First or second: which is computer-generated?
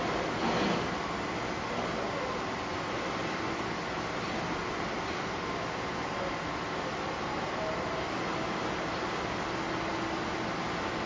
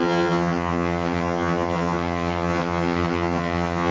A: second